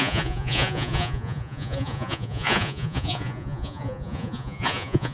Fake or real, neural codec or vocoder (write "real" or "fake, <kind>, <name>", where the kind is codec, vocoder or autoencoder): fake, vocoder, Vocos